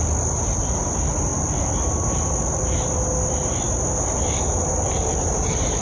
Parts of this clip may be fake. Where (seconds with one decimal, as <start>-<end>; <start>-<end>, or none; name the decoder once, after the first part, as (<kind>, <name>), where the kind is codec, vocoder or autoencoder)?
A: 0.0-1.3 (vocoder, BigVGAN v2); 4.1-5.8